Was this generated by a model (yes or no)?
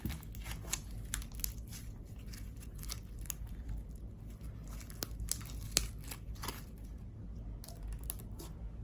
no